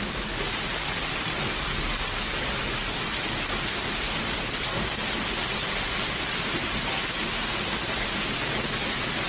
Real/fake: real